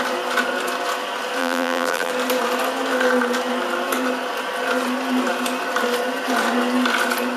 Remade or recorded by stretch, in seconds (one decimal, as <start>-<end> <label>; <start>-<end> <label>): 0.0-1.4 recorded; 1.4-2.1 remade; 2.1-7.4 recorded

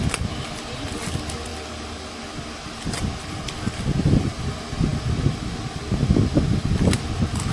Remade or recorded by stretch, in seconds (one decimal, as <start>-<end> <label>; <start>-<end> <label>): 0.0-7.5 recorded

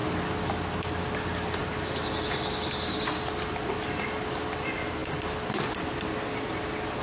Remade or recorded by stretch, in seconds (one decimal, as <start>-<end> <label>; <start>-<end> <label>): 0.0-7.0 recorded

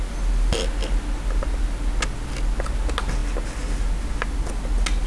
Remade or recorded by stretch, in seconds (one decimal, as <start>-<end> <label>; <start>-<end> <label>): 0.0-5.1 recorded

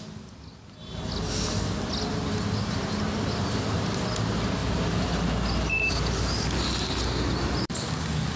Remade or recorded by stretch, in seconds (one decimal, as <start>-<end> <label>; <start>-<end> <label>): 0.0-8.4 recorded

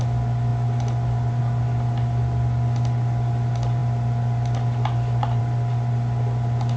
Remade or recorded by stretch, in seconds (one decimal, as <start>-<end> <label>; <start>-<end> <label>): 0.0-6.8 recorded